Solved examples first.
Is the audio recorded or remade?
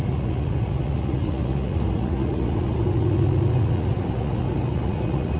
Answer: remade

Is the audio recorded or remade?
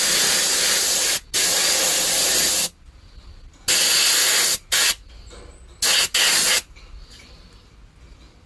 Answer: recorded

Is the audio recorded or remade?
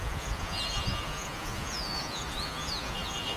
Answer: remade